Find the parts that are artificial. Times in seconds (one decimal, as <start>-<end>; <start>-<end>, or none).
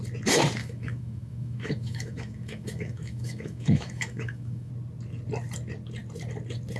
0.6-4.7